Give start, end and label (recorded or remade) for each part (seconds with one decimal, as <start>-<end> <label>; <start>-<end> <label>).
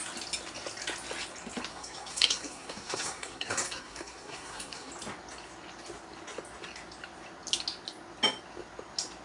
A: 0.0-1.7 recorded; 1.7-4.9 remade; 4.9-9.2 recorded